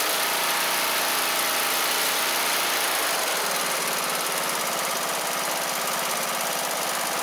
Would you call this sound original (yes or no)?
yes